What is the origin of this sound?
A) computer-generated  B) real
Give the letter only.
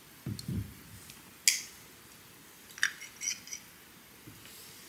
B